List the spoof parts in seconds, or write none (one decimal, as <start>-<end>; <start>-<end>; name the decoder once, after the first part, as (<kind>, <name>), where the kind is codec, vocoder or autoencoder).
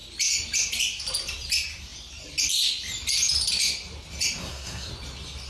4.4-4.9 (codec, SNAC)